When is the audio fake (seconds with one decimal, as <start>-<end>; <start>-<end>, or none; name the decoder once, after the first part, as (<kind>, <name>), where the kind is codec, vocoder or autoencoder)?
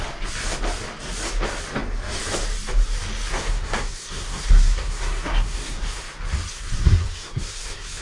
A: 3.3-6.0 (codec, SNAC); 6.5-8.0